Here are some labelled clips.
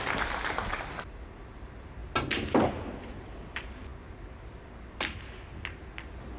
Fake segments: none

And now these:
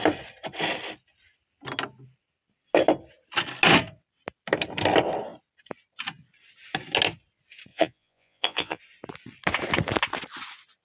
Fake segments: 7.7-8.8 (vocoder, Vocos)

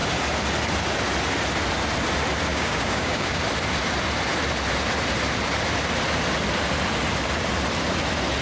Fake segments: 2.5-3.4 (codec, DAC)

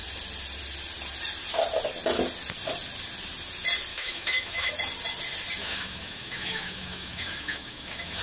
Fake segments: 3.9-4.7 (autoencoder, DAC-VAE); 5.6-8.2

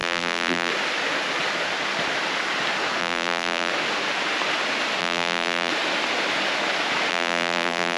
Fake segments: 0.0-0.7 (vocoder, BigVGAN v2); 3.0-3.7; 5.0-5.7; 7.1-8.0